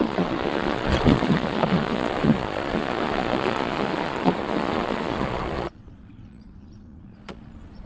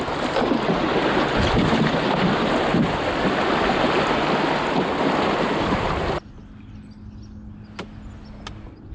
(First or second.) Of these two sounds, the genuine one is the second